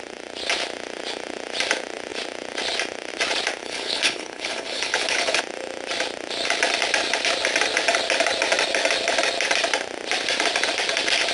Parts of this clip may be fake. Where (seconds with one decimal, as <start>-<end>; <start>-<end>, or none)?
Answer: 3.6-5.4